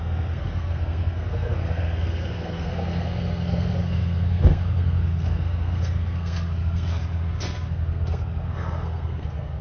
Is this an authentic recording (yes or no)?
no